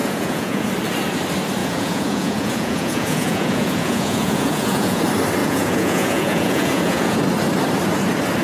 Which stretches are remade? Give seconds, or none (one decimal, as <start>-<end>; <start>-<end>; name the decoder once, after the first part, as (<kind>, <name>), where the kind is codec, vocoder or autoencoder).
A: 0.0-0.7 (vocoder, Vocos); 1.6-5.0; 5.4-7.2